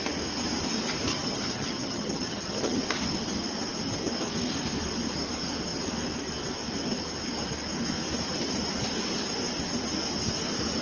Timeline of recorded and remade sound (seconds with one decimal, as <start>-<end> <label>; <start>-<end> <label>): 0.0-1.1 recorded; 1.1-2.8 remade; 2.8-10.8 recorded